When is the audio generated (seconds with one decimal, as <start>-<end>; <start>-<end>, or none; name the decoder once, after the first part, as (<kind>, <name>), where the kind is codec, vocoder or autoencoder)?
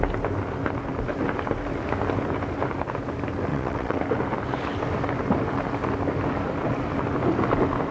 3.5-4.0 (vocoder, WaveNeXt)